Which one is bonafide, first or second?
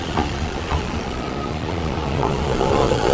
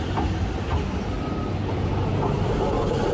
second